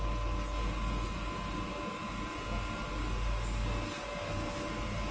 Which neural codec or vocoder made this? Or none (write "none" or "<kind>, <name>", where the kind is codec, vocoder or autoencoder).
none